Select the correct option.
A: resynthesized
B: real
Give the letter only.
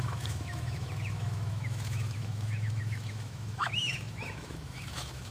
A